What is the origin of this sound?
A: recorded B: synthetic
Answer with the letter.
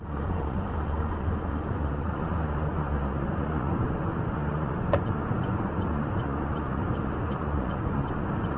B